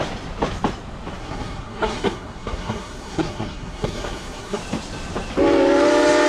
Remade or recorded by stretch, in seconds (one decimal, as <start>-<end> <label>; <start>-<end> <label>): 0.0-1.2 recorded; 1.2-4.6 remade; 4.6-6.3 recorded